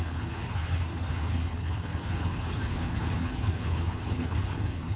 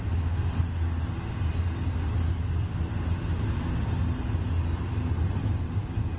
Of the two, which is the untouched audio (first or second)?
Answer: second